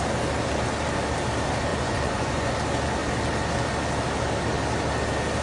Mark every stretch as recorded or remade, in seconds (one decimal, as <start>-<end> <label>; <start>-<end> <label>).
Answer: 0.0-1.7 recorded; 1.7-2.5 remade; 2.5-5.4 recorded